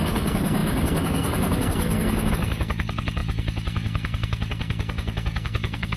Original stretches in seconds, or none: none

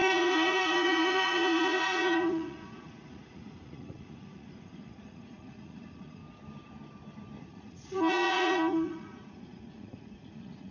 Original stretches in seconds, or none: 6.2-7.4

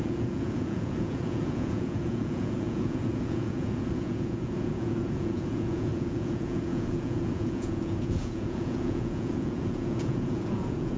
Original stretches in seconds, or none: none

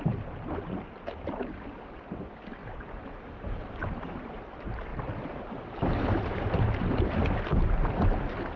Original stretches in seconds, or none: 0.0-2.6; 4.4-4.9; 6.4-8.6